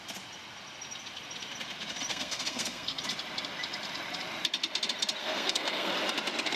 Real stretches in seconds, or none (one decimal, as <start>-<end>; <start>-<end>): 0.0-2.1; 3.0-5.2; 5.9-6.6